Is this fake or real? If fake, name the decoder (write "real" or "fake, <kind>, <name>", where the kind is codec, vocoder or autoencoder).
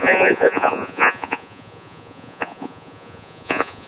fake, vocoder, Vocos